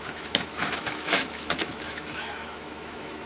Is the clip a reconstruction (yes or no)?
yes